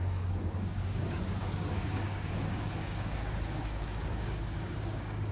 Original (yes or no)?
no